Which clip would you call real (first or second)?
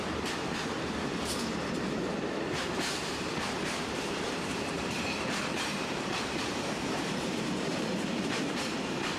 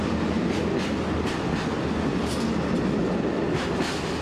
second